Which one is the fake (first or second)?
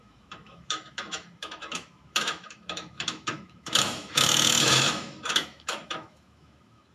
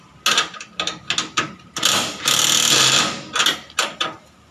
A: first